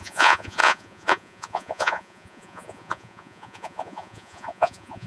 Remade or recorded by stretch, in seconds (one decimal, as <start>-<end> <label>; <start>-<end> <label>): 0.0-5.1 remade